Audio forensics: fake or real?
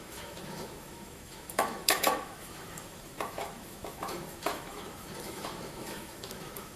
fake